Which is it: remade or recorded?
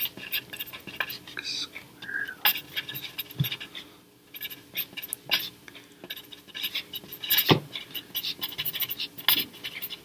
recorded